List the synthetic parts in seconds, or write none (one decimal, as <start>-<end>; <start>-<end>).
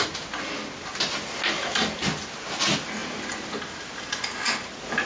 none